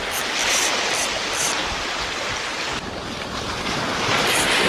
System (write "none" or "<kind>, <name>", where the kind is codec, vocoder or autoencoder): none